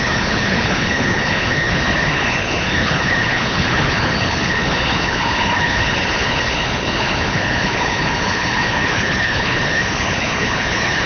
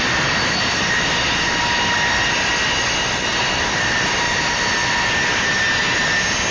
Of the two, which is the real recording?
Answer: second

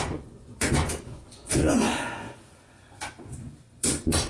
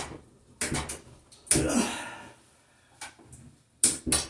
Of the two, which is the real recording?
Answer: second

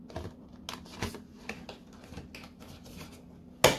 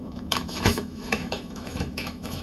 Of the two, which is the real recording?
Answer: first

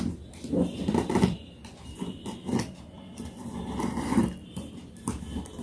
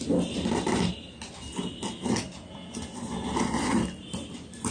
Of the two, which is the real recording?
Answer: second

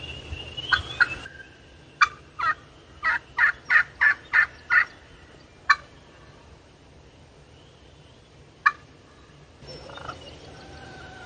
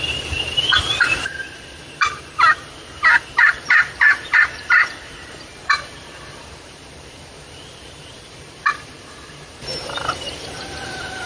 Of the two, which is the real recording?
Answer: first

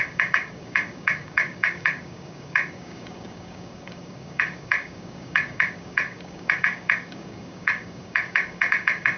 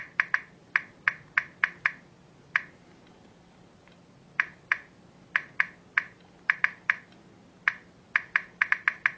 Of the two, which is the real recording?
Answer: second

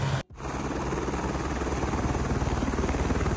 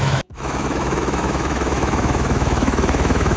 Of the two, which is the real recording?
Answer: first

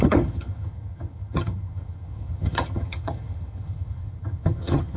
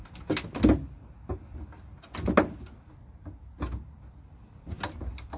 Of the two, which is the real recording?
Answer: second